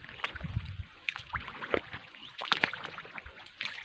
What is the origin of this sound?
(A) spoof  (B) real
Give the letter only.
A